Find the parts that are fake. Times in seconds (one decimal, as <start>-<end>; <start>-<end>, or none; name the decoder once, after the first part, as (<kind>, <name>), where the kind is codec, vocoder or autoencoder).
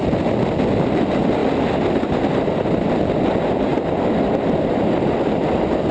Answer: 3.7-4.7 (vocoder, BigVGAN v2)